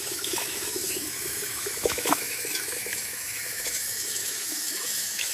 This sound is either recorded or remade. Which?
remade